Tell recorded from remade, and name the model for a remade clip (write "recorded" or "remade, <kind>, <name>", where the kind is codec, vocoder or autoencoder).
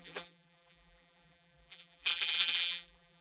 remade, vocoder, BigVGAN v2